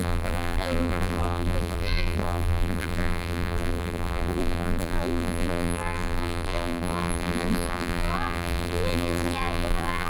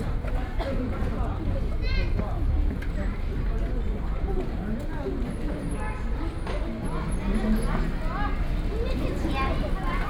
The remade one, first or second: first